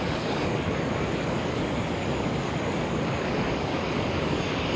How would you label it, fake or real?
fake